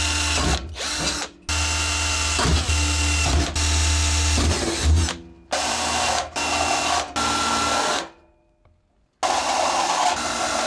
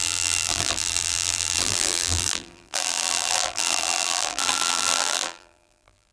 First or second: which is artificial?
second